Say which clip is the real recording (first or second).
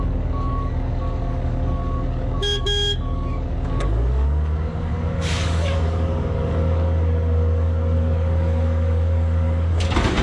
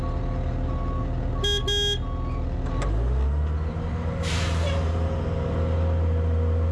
second